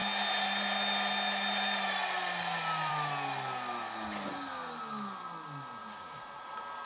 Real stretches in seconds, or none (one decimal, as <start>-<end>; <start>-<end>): 0.0-5.8; 6.5-6.9